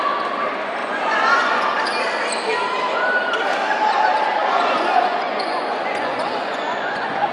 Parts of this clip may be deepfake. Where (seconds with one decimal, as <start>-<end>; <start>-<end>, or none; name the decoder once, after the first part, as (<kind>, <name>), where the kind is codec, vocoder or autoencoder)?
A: 0.8-1.6 (vocoder, Vocos); 4.4-7.3